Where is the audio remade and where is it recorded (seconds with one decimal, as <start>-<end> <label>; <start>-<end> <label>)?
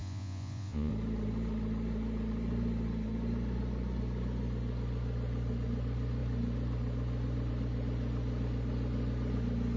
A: 0.0-0.9 remade; 0.9-9.8 recorded